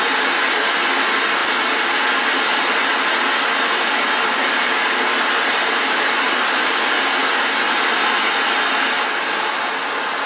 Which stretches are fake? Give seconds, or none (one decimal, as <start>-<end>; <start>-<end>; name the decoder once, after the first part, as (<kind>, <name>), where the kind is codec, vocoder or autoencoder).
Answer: none